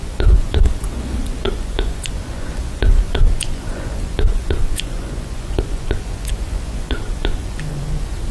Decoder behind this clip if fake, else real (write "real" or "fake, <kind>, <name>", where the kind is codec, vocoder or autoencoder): fake, vocoder, Vocos